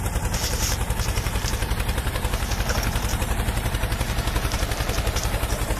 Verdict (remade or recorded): remade